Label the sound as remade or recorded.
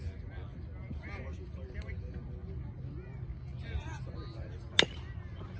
recorded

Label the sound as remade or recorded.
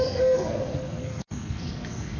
remade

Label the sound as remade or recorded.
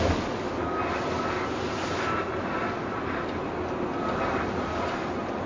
recorded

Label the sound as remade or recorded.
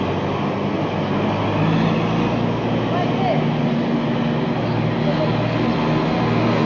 recorded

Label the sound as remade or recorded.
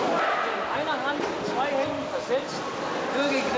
recorded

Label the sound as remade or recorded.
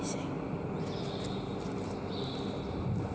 recorded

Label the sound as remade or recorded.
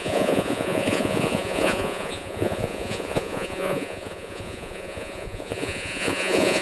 remade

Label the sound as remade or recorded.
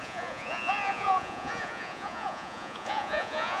remade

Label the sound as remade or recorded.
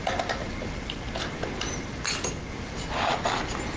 recorded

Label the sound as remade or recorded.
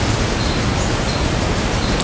recorded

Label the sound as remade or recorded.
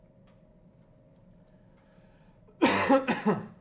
recorded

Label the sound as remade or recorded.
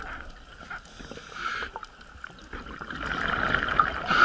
recorded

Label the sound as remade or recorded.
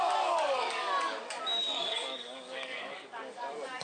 remade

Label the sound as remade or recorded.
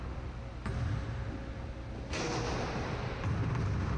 recorded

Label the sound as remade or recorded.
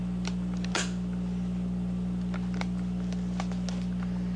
recorded